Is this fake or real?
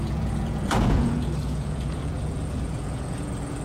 fake